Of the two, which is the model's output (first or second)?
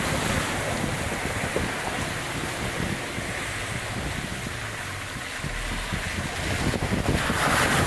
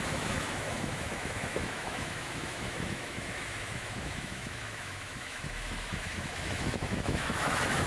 second